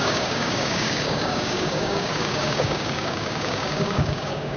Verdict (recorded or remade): remade